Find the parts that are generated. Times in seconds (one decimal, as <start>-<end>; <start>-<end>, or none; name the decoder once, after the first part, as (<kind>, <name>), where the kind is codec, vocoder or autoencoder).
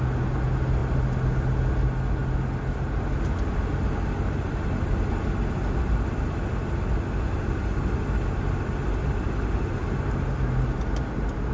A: none